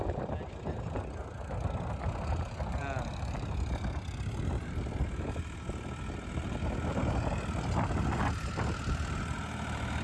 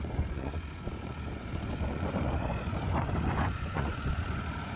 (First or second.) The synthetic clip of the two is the second